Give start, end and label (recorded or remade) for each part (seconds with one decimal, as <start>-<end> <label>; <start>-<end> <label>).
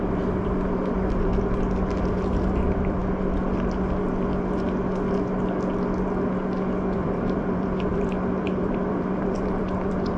0.0-1.3 remade; 1.3-2.0 recorded; 2.0-3.0 remade; 3.0-6.9 recorded; 6.9-10.2 remade